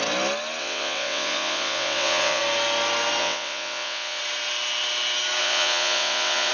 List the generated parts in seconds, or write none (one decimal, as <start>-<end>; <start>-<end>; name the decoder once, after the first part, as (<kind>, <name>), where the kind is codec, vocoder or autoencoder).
0.6-2.4 (vocoder, WaveNeXt); 3.2-4.2; 5.4-6.5